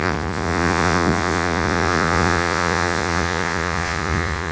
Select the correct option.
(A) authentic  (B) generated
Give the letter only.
B